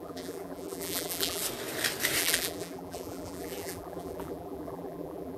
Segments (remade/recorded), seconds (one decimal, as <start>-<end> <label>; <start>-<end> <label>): 0.0-1.4 remade; 1.4-2.2 recorded; 2.2-5.4 remade